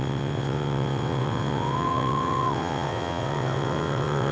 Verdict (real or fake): fake